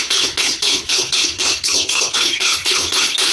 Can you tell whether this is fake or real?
fake